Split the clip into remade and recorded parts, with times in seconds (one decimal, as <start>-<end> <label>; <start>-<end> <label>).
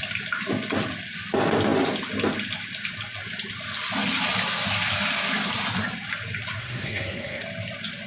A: 0.0-6.6 recorded; 6.6-7.4 remade; 7.4-8.1 recorded